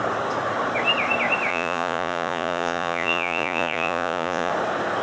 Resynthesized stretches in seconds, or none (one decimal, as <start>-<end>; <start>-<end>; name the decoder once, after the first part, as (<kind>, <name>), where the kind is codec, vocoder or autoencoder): 1.5-4.5 (vocoder, Vocos)